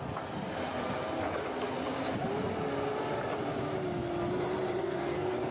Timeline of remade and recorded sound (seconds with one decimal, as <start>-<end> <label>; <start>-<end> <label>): 0.0-4.8 recorded; 4.8-5.5 remade